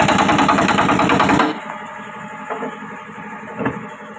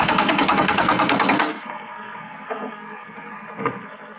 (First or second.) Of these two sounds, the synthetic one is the second